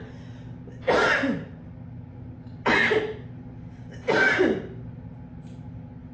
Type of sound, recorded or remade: recorded